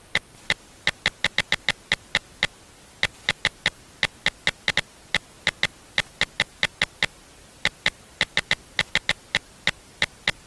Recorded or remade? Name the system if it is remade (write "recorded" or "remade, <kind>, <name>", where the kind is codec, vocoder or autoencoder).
recorded